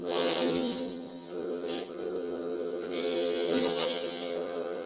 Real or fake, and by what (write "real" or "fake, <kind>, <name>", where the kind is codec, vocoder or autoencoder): fake, vocoder, HiFi-GAN